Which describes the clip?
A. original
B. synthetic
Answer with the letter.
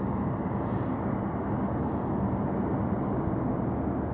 A